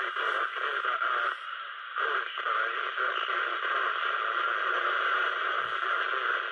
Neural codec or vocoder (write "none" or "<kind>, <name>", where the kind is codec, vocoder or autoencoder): none